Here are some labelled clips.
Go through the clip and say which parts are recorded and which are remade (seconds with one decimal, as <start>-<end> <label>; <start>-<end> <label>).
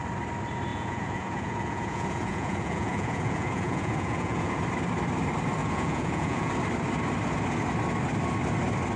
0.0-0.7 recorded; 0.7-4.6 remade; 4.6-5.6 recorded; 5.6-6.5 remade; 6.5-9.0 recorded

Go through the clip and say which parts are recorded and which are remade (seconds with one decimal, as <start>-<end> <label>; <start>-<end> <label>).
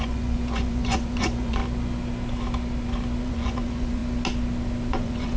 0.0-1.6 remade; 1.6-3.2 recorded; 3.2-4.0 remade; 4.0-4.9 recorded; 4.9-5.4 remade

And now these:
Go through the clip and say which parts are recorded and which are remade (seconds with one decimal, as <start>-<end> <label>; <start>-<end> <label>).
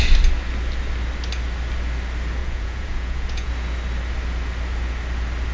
0.0-2.4 recorded; 2.4-3.5 remade; 3.5-5.5 recorded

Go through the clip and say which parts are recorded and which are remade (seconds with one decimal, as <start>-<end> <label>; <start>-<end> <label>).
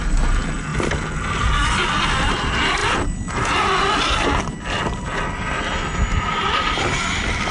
0.0-7.5 recorded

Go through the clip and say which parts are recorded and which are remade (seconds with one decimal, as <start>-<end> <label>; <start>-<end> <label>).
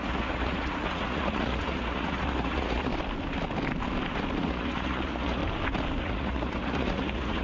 0.0-2.9 remade; 2.9-4.4 recorded; 4.4-5.4 remade; 5.4-6.0 recorded; 6.0-7.4 remade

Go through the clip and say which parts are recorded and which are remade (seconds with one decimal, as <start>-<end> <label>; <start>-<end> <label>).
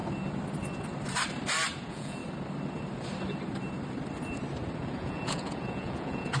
0.0-1.8 recorded; 1.8-2.2 remade; 2.2-4.8 recorded; 4.8-6.4 remade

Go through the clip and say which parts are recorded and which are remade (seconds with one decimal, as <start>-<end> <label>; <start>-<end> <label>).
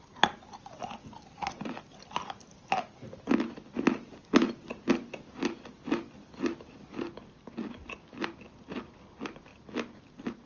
0.0-10.5 recorded